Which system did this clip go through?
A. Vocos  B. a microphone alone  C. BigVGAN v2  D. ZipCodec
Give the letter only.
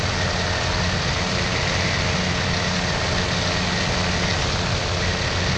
B